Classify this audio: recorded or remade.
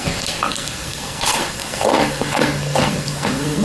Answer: remade